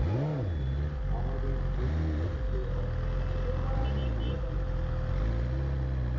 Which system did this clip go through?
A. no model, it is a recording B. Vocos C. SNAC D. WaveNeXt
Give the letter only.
A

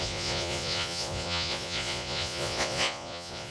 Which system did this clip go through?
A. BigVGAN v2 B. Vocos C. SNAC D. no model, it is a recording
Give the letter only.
B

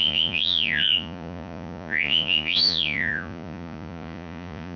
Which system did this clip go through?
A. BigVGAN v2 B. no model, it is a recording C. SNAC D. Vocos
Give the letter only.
D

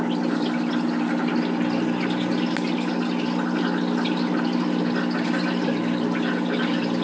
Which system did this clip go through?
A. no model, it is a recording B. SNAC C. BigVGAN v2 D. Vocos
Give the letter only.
A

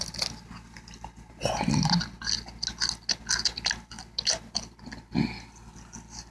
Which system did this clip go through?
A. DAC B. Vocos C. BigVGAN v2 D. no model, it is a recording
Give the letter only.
D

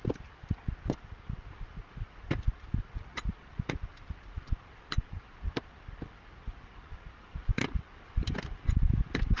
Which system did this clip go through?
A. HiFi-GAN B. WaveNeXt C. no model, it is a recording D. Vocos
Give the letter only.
C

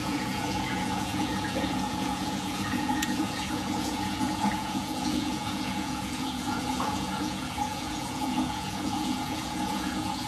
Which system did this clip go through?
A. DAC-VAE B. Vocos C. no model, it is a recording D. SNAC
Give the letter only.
B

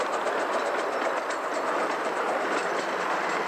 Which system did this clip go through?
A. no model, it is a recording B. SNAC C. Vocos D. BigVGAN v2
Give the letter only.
A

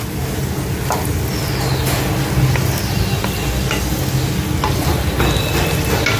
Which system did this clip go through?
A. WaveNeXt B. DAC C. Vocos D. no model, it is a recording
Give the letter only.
D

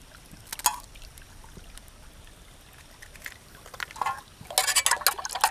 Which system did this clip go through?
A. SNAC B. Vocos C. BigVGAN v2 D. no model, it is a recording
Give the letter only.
D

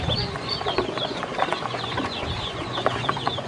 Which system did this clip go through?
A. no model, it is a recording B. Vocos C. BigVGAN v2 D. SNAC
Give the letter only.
B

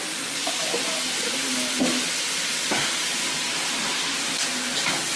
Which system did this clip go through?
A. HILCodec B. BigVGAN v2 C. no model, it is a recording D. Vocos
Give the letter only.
C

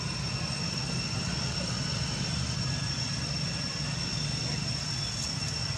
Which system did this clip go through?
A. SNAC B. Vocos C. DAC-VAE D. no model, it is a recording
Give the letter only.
D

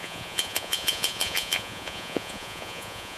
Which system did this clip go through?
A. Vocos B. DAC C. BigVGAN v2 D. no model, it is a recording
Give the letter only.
A